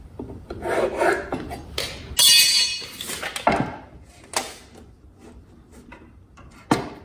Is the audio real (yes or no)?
yes